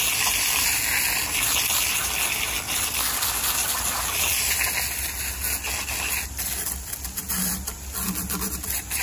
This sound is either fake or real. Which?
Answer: real